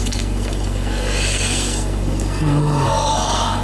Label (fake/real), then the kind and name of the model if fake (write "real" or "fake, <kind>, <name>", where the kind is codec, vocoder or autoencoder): fake, codec, SNAC